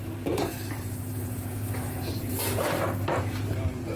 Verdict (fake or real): fake